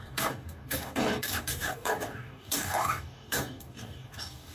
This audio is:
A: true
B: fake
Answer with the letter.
B